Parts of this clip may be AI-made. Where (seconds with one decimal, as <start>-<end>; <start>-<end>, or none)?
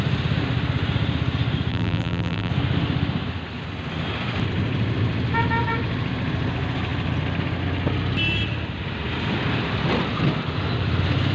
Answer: 1.7-2.5